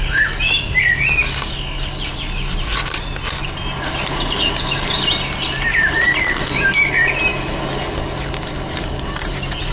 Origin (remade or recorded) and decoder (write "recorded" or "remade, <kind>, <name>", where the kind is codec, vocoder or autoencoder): recorded